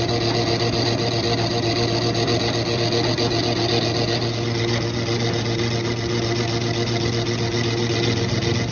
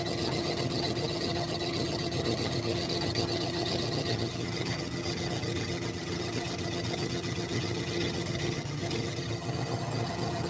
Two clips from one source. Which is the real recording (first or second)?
first